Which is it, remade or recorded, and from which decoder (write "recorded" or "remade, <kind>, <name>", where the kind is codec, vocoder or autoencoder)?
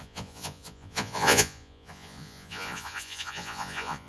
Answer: remade, vocoder, Vocos